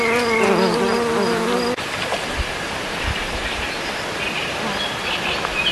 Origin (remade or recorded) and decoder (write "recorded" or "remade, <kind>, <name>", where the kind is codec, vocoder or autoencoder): recorded